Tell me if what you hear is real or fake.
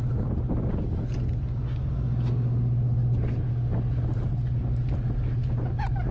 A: real